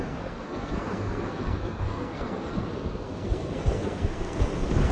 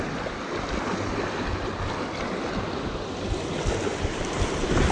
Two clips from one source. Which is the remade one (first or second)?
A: first